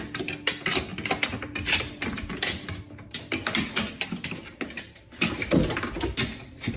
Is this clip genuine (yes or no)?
yes